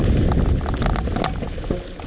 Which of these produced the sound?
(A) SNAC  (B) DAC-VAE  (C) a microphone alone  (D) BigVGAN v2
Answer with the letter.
C